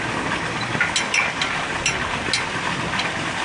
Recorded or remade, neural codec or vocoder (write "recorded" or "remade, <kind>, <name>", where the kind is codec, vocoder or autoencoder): recorded